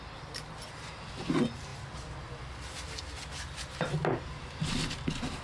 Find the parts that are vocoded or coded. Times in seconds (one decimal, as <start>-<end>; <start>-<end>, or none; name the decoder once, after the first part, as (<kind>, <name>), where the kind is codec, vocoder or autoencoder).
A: none